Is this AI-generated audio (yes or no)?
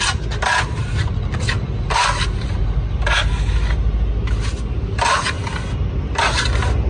no